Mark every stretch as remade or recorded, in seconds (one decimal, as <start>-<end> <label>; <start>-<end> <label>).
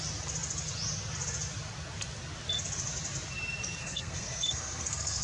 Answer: 0.0-3.8 recorded; 3.8-5.2 remade